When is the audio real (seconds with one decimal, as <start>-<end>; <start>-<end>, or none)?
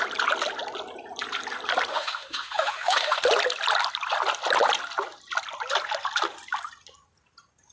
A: 0.0-1.9; 3.2-7.7